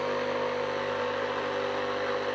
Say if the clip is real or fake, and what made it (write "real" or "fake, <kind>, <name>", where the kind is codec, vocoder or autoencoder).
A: real